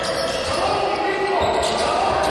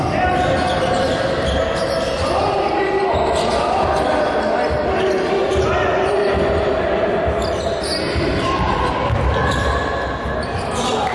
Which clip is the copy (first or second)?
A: first